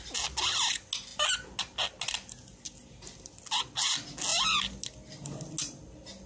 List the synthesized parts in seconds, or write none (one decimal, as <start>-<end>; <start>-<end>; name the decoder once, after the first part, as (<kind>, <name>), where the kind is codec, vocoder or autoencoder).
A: none